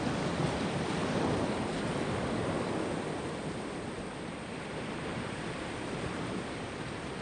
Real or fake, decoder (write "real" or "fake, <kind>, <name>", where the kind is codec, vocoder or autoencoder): real